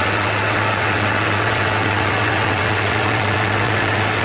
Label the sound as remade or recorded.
remade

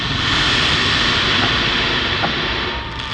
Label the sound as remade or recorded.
recorded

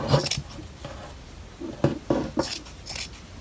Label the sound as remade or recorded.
recorded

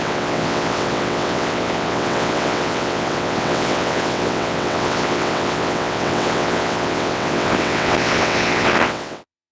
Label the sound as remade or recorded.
remade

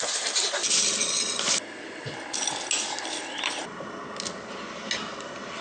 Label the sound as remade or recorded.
recorded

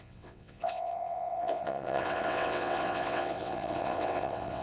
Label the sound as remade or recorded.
remade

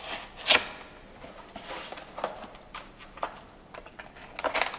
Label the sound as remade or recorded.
recorded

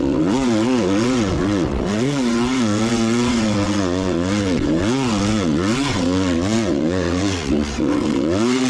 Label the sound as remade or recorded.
remade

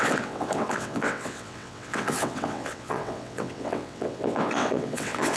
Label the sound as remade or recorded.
remade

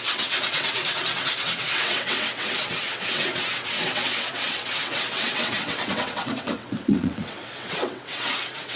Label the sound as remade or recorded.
remade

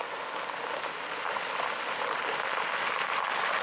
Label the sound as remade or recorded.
recorded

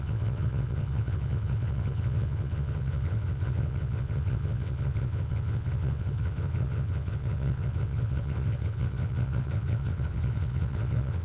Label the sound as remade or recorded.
remade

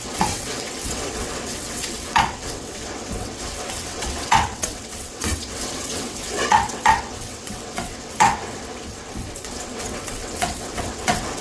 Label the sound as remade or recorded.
remade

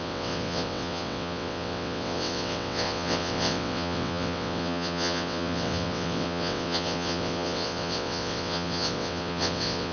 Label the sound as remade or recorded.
remade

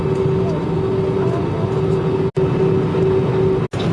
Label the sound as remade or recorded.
recorded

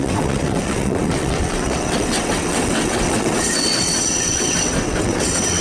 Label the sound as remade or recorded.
remade